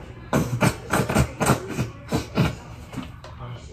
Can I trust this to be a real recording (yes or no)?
yes